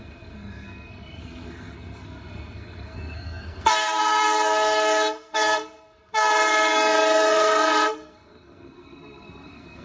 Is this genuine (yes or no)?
no